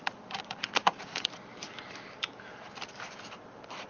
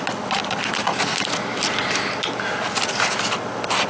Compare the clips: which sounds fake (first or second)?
first